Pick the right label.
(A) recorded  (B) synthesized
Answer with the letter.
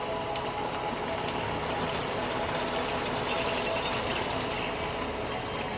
A